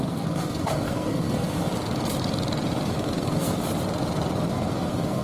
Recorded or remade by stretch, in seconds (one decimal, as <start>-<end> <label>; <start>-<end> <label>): 0.0-1.7 remade; 1.7-2.9 recorded; 2.9-3.7 remade; 3.7-4.5 recorded; 4.5-5.2 remade